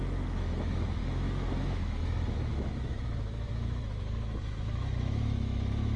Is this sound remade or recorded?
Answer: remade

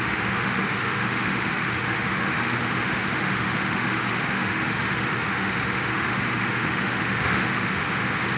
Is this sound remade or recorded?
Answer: remade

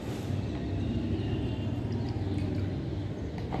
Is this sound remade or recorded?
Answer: recorded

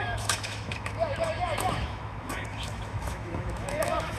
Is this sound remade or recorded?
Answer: remade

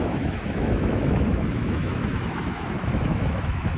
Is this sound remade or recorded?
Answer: remade